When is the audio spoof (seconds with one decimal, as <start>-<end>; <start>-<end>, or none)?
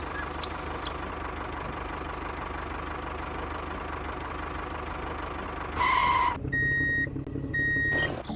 none